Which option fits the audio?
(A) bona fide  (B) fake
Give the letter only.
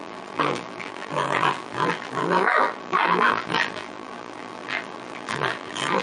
B